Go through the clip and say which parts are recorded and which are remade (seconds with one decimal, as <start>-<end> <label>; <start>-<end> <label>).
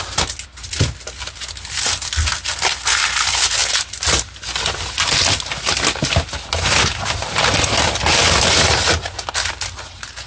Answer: 0.0-10.3 recorded